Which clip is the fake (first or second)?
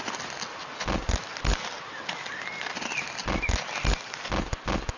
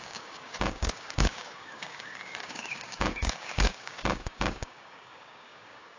second